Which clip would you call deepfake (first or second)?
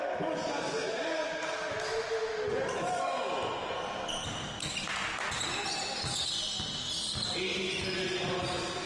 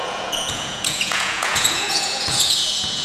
second